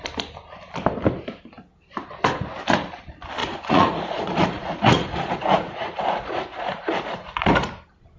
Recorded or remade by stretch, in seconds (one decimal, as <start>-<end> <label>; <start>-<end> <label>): 0.0-3.4 recorded; 3.4-7.5 remade; 7.5-8.2 recorded